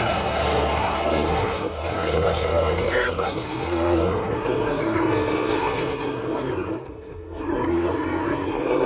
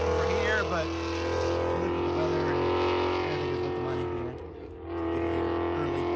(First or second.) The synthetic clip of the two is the first